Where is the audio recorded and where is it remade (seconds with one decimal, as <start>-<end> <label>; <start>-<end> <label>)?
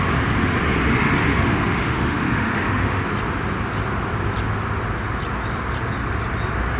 0.0-1.2 recorded; 1.2-3.0 remade; 3.0-6.8 recorded